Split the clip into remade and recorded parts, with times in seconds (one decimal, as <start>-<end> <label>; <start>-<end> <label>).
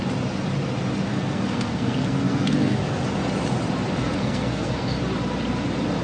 0.0-1.1 recorded; 1.1-2.8 remade; 2.8-4.0 recorded; 4.0-5.0 remade; 5.0-6.0 recorded